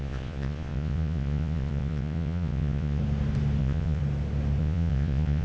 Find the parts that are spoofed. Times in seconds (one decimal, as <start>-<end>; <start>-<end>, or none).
0.0-3.0; 3.6-4.0; 4.6-5.4